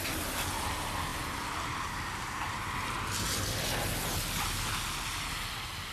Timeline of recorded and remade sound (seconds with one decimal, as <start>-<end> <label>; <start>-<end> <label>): 0.0-5.9 recorded